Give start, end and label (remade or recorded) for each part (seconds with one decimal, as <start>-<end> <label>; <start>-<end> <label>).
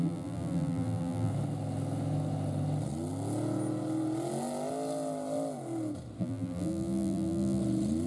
0.0-1.3 remade; 1.3-6.2 recorded; 6.2-7.6 remade; 7.6-8.1 recorded